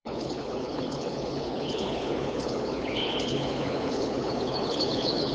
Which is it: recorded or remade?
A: remade